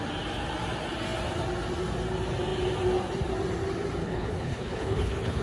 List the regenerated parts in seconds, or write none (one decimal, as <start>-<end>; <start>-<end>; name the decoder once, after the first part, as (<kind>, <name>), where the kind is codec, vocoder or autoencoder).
4.0-5.4 (codec, HILCodec)